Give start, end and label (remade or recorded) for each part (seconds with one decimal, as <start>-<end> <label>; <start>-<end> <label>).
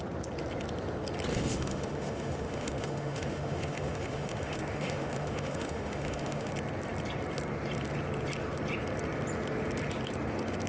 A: 0.0-1.3 recorded; 1.3-6.5 remade; 6.5-10.7 recorded